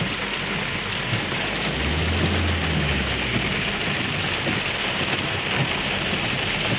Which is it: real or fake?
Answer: real